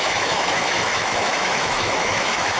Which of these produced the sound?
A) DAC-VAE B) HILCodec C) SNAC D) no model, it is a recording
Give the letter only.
A